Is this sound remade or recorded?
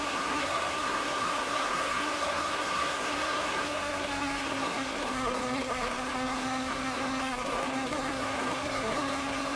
remade